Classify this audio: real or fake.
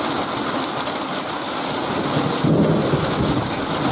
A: real